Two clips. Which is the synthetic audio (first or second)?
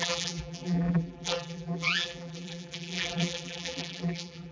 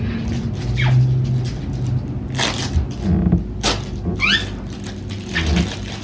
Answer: first